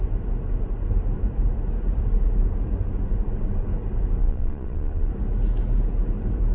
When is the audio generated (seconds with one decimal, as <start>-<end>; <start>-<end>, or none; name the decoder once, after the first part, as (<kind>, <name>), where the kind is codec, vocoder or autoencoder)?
4.2-5.1 (vocoder, Vocos)